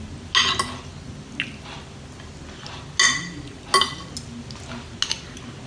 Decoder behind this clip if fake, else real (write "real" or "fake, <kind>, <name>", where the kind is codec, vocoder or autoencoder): real